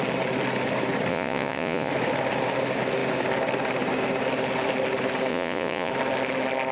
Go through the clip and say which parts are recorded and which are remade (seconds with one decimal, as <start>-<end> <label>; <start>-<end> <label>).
0.0-1.1 recorded; 1.1-1.9 remade; 1.9-5.3 recorded; 5.3-5.9 remade; 5.9-6.7 recorded